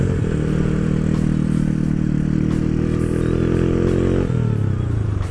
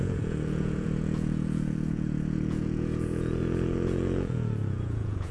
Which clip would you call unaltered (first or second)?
first